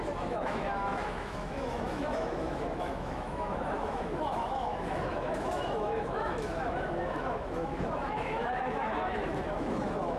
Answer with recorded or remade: remade